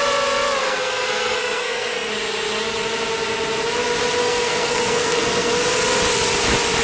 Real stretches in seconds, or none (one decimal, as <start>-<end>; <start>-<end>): 0.0-0.6; 2.1-4.2; 5.5-6.8